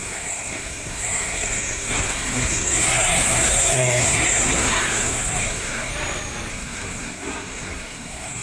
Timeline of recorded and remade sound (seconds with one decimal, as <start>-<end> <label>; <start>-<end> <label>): 0.0-5.9 remade; 5.9-6.5 recorded; 6.5-8.4 remade